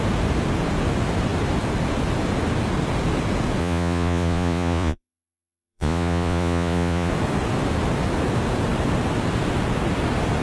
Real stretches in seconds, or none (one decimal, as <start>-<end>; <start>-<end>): 0.0-3.6; 7.1-10.4